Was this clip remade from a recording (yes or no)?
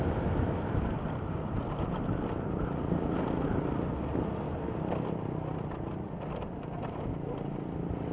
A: no